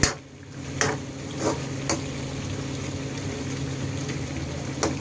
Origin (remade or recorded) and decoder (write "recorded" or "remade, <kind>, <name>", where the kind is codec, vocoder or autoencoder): recorded